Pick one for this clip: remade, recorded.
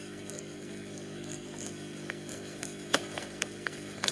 remade